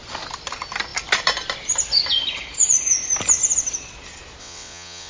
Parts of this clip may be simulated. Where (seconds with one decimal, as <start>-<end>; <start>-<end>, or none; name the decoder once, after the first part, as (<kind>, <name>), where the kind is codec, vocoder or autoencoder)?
4.4-5.1 (vocoder, WaveNeXt)